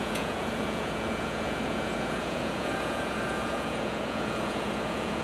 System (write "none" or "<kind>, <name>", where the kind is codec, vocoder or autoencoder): vocoder, Vocos